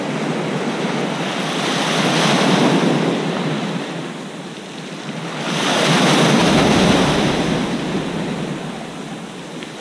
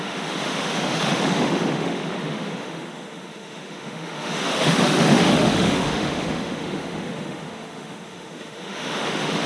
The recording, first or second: first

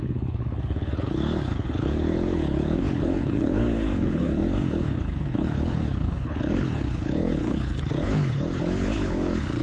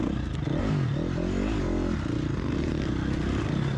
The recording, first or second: second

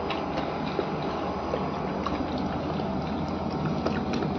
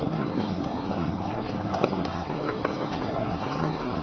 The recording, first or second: first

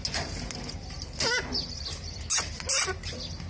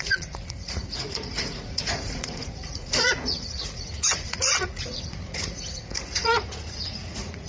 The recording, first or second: first